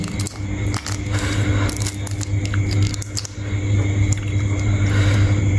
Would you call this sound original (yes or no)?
yes